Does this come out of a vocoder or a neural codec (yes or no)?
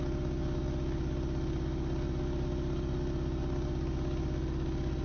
no